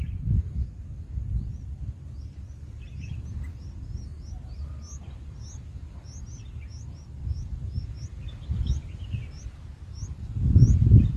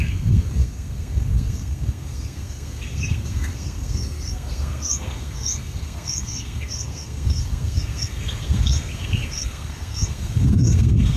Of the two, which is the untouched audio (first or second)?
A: first